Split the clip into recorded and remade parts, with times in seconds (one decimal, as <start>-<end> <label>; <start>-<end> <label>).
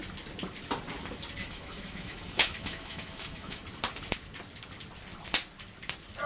0.0-1.4 recorded; 1.4-3.6 remade; 3.6-6.3 recorded